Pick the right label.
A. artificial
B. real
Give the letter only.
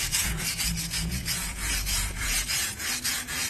A